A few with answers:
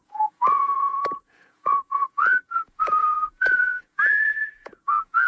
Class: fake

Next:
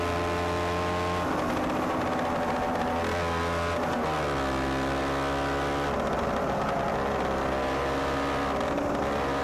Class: real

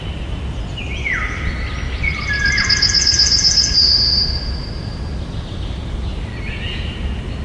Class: real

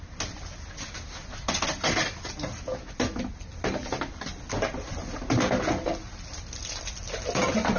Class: real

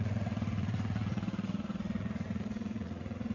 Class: fake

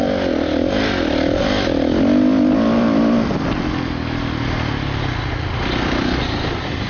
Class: real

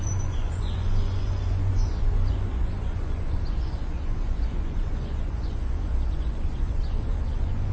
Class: fake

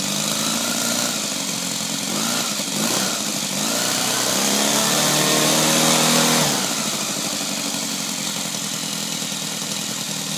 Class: real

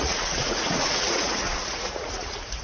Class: fake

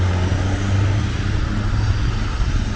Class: real